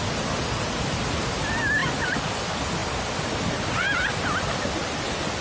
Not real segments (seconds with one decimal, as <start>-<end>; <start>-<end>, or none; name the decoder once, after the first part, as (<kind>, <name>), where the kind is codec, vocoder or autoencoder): none